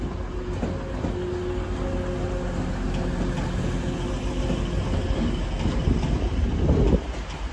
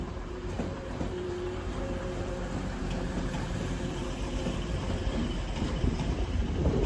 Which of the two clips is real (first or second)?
first